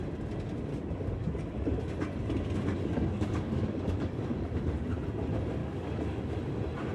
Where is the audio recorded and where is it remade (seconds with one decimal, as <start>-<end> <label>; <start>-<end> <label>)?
0.0-0.7 recorded; 0.7-1.8 remade; 1.8-2.7 recorded; 2.7-4.9 remade; 4.9-5.6 recorded; 5.6-6.3 remade; 6.3-6.9 recorded